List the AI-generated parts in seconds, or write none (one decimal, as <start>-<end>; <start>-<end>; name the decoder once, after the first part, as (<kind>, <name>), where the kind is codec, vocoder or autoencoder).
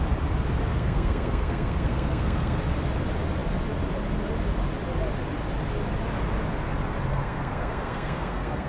0.7-2.6 (codec, SNAC); 7.1-8.7